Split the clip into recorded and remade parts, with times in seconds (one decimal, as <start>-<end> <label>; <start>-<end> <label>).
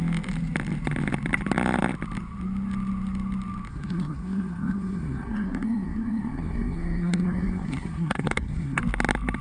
0.0-3.7 recorded; 3.7-8.8 remade; 8.8-9.4 recorded